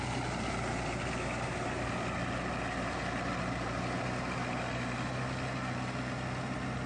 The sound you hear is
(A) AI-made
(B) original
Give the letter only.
B